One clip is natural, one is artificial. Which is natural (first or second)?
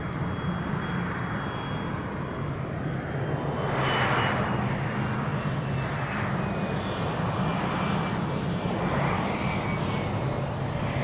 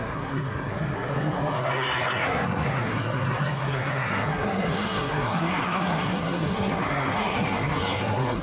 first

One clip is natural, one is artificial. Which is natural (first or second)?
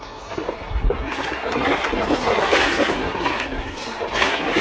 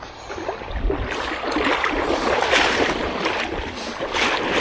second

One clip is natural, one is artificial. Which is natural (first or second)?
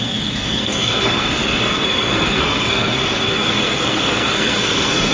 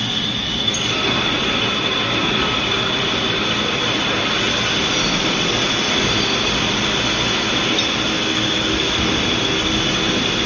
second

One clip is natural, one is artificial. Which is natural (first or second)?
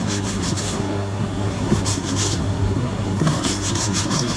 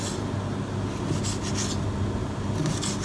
second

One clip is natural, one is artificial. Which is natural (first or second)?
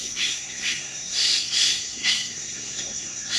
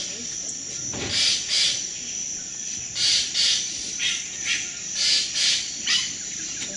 second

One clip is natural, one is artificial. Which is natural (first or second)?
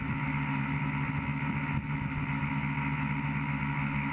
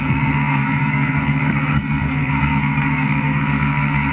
first